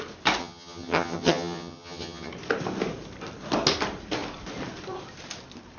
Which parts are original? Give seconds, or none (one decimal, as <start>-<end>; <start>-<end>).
0.0-0.4; 2.3-5.8